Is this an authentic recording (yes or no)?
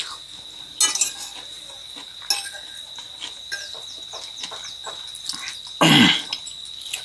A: yes